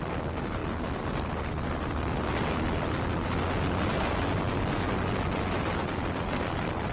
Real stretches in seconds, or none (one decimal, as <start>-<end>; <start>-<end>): 0.0-6.9